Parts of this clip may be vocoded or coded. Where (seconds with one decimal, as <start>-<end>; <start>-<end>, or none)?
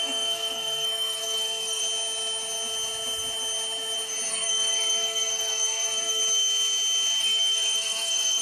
0.0-1.8; 4.3-6.2; 7.2-8.4